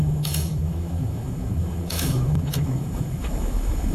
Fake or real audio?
fake